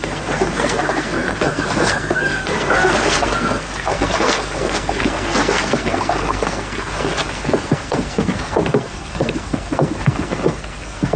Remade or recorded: remade